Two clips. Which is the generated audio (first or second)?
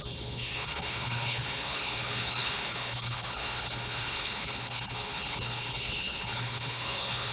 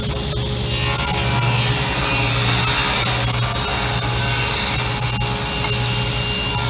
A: first